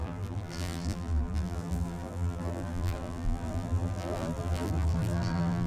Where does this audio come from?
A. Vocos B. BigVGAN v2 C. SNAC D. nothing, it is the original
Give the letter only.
B